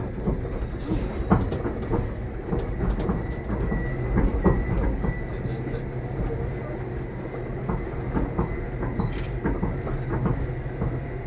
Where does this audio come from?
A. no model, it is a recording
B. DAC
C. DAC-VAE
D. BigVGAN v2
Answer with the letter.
A